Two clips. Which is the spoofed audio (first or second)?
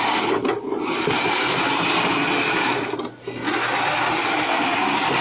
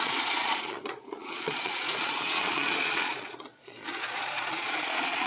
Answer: second